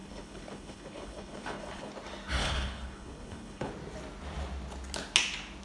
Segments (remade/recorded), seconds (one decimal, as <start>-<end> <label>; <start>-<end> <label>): 0.0-1.9 remade; 1.9-2.4 recorded; 2.4-3.7 remade; 3.7-5.6 recorded